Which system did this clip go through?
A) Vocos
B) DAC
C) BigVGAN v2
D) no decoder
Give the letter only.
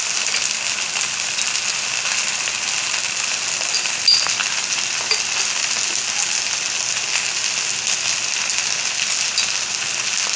D